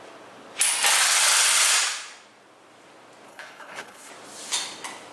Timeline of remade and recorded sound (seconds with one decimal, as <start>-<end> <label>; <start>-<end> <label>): 0.0-3.3 recorded; 3.3-4.1 remade; 4.1-5.1 recorded